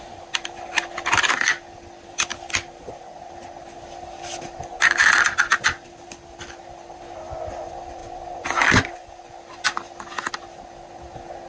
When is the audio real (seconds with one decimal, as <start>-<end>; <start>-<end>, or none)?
0.0-11.5